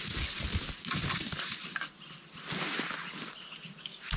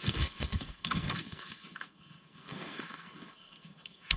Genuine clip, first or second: first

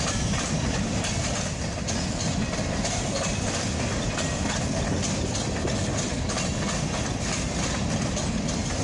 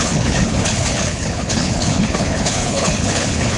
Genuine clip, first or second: first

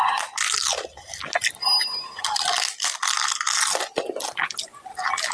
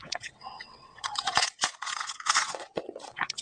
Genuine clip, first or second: first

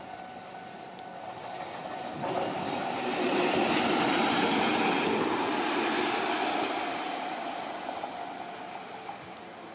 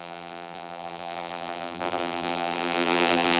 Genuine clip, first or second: first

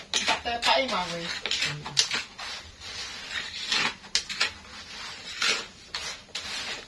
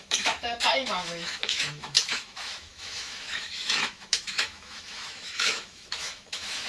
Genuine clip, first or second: first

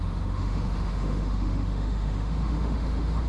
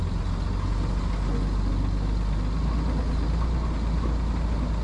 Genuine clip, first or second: second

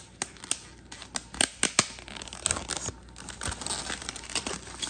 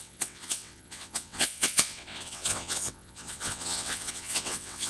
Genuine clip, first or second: first